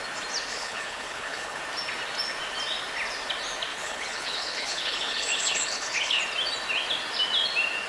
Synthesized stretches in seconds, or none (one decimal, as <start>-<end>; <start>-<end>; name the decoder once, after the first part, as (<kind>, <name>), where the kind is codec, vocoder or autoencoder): 0.5-1.6 (codec, HILCodec); 3.7-6.2